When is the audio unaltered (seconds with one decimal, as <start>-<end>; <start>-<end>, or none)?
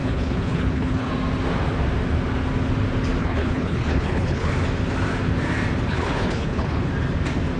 1.1-3.2; 4.5-5.9; 6.9-7.6